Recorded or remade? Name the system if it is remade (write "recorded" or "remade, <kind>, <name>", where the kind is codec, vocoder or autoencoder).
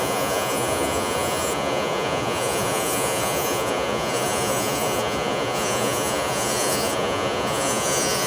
remade, vocoder, Vocos